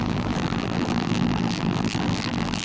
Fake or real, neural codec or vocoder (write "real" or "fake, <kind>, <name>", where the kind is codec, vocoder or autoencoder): fake, vocoder, BigVGAN v2